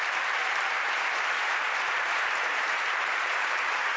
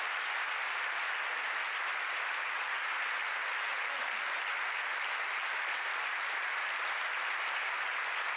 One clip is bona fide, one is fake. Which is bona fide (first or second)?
second